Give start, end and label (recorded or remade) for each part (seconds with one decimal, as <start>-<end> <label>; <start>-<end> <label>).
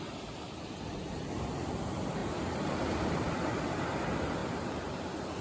0.0-4.4 recorded; 4.4-5.0 remade; 5.0-5.4 recorded